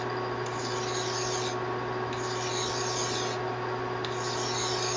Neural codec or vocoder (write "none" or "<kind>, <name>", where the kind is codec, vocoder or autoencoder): none